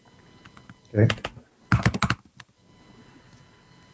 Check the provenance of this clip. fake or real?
real